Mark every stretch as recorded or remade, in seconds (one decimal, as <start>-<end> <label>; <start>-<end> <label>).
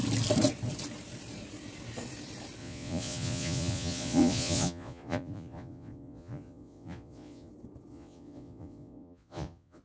0.0-2.6 recorded; 2.6-7.5 remade; 7.5-7.9 recorded; 7.9-9.8 remade